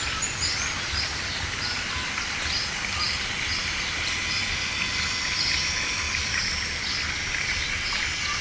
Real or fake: real